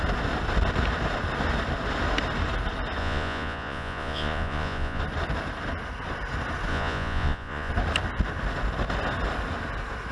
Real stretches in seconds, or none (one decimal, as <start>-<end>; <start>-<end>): 0.0-3.0; 5.0-6.7; 7.7-10.1

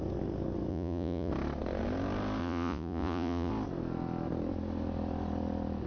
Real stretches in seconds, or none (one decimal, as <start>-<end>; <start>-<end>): 0.0-0.7; 1.3-2.4; 3.5-5.9

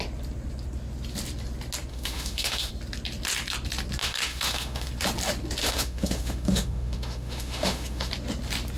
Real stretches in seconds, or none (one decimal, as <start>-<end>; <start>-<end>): 0.0-1.9; 2.7-4.0; 4.9-5.6; 8.1-8.8